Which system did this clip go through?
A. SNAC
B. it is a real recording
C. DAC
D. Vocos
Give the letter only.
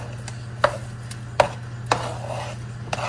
B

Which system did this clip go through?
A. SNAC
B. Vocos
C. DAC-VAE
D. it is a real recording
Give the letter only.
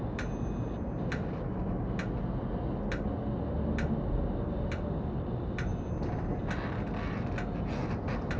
D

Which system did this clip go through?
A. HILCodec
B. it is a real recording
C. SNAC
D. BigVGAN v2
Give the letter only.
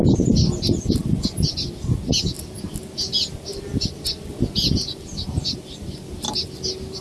B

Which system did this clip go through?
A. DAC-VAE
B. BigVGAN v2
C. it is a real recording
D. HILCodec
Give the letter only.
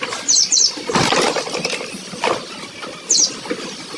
C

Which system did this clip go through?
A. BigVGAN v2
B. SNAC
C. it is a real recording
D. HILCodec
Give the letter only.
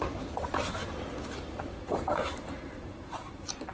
A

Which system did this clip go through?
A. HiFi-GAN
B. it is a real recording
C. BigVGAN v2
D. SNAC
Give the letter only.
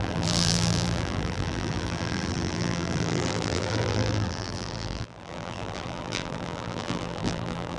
C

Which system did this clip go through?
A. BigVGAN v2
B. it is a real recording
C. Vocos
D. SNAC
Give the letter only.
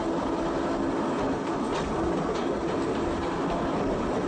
B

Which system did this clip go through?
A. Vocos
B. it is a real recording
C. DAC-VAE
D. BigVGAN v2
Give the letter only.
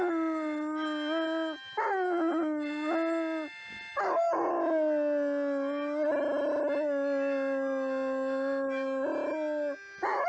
B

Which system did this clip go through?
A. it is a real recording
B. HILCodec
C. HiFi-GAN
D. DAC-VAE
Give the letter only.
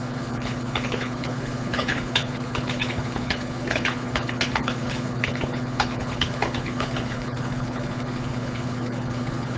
B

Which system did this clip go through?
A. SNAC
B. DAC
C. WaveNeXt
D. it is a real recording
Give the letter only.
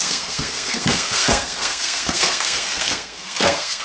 A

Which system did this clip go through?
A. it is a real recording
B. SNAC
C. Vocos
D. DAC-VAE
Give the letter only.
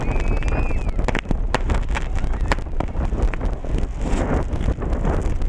A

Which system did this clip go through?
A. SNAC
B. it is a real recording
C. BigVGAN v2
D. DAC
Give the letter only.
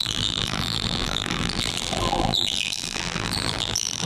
C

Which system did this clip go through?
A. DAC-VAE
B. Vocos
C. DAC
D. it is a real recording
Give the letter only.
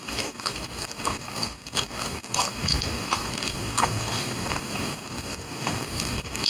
C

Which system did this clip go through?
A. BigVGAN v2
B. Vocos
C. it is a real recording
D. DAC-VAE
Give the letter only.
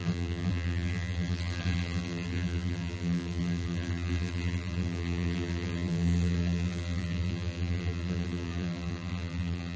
A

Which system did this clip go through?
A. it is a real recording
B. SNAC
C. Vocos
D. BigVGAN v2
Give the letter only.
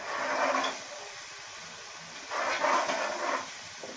A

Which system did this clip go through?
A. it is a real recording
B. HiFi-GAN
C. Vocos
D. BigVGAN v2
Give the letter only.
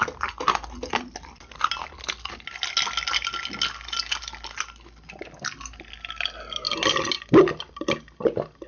A